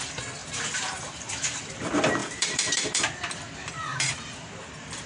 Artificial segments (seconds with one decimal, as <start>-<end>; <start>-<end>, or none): 0.4-1.6; 2.2-3.0; 3.9-4.5

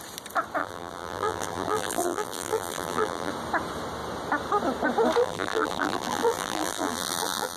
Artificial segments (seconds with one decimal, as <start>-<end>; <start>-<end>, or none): 0.6-3.3; 5.2-7.6

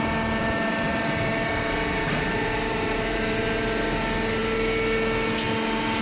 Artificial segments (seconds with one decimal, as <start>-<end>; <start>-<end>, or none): 0.4-4.0